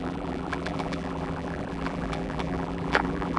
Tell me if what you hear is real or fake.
fake